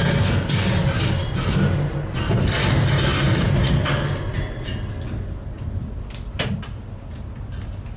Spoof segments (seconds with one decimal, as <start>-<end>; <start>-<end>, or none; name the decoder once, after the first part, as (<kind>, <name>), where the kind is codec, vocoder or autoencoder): none